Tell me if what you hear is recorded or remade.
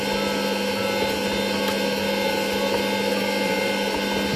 recorded